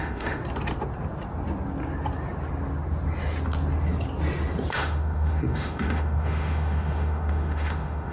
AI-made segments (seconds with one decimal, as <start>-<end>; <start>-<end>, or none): 0.0-0.4; 4.7-8.1